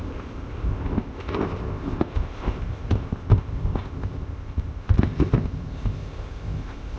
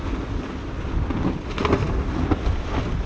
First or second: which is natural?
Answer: second